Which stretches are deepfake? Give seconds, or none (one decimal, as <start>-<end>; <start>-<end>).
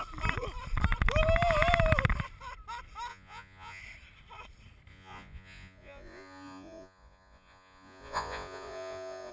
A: 3.1-3.8; 4.9-9.3